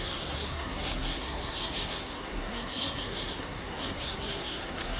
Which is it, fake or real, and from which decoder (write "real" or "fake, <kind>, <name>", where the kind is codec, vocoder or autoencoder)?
fake, codec, SNAC